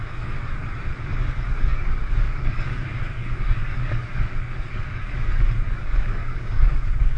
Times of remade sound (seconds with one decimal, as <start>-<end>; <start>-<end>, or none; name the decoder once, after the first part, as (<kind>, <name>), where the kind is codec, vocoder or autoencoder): 0.0-7.2 (codec, DAC)